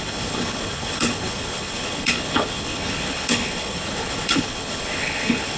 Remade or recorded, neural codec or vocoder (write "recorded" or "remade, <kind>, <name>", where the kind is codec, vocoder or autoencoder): remade, codec, HILCodec